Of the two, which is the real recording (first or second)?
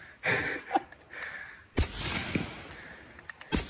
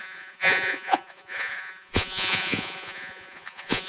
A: first